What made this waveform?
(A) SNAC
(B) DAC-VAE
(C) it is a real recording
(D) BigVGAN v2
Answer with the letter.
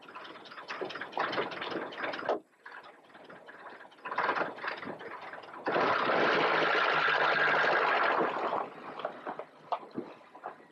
C